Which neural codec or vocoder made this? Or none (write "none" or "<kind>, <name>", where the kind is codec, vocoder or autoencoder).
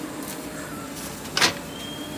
none